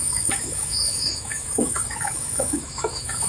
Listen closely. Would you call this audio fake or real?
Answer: fake